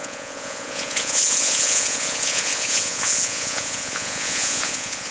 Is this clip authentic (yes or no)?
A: no